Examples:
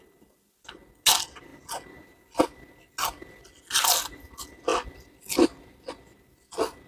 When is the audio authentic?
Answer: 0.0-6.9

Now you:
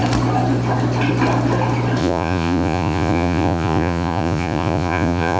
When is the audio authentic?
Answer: 0.0-2.0

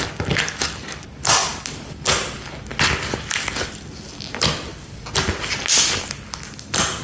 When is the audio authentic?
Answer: 0.0-7.0

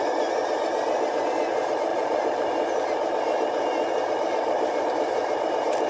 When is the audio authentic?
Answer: 0.0-1.9; 2.5-4.4; 5.5-5.9

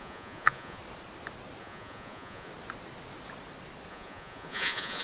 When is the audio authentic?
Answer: 0.8-1.6; 2.5-3.9

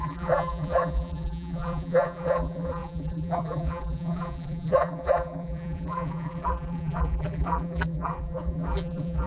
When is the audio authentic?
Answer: none